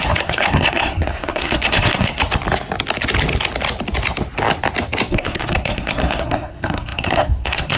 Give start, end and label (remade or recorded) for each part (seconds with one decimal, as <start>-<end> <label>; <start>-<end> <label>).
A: 0.0-2.2 remade; 2.2-5.1 recorded; 5.1-7.8 remade